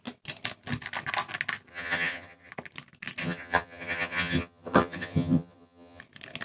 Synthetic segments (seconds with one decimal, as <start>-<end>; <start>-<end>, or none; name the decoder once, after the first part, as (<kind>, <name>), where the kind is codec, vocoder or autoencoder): 1.7-2.5 (vocoder, HiFi-GAN); 3.2-6.0